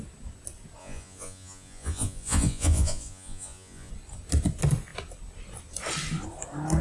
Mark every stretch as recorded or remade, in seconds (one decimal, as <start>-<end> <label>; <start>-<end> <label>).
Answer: 0.0-0.8 recorded; 0.8-3.9 remade; 3.9-6.8 recorded